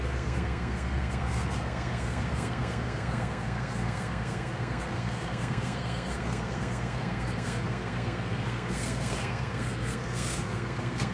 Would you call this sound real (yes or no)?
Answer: no